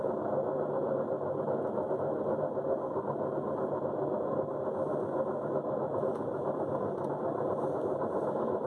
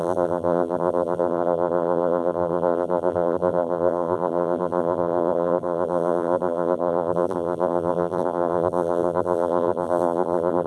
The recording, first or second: first